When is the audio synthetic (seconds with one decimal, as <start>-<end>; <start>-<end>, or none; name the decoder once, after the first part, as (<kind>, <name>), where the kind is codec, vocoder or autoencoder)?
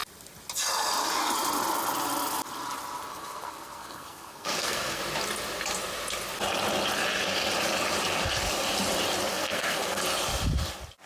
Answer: 3.1-5.0 (codec, SNAC); 9.3-10.0